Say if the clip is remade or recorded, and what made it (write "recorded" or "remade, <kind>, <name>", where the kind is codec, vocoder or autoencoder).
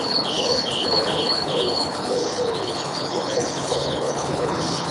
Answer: remade, codec, HILCodec